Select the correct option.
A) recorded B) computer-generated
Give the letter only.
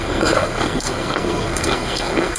B